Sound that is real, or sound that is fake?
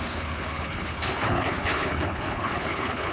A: fake